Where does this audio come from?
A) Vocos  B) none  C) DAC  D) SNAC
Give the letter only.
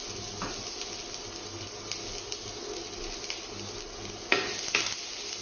B